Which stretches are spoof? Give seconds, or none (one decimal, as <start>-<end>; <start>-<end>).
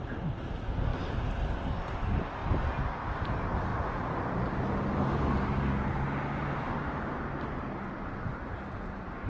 none